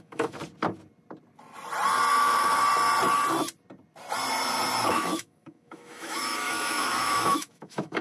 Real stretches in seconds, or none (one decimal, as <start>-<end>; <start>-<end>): 0.4-2.1; 2.6-4.9